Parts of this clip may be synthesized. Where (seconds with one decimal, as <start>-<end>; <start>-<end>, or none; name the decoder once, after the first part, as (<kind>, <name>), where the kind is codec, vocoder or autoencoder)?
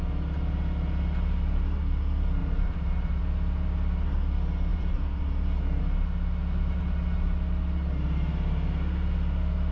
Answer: 2.4-3.2 (vocoder, BigVGAN v2); 4.7-5.8